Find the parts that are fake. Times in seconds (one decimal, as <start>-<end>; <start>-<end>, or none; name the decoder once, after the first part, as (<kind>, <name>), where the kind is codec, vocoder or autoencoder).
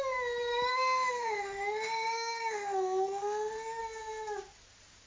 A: 0.7-3.8 (autoencoder, DAC-VAE)